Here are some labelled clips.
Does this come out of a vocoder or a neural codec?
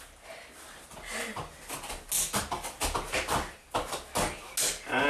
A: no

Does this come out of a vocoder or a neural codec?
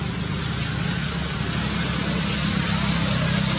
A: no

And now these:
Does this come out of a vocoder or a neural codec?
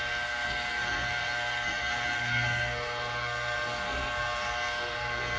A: yes